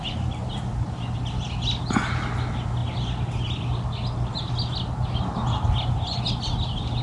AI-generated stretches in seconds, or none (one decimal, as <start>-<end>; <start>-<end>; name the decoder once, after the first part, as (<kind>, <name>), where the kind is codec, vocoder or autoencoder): none